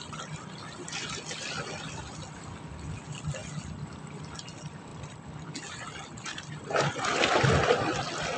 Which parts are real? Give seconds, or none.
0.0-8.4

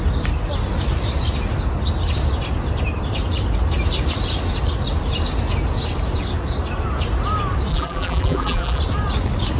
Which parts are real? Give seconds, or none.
0.0-7.7; 8.8-9.6

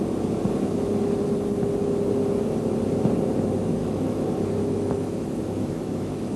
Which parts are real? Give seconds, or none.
0.0-3.8

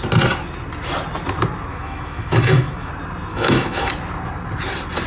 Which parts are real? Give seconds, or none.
0.0-1.7; 2.9-3.3; 3.9-5.1

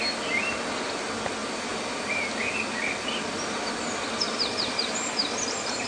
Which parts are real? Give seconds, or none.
0.0-5.2

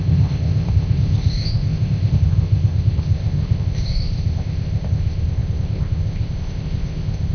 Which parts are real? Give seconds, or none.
none